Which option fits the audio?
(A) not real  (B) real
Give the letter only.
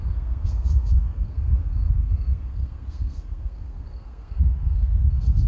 A